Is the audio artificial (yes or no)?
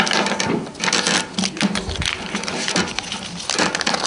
no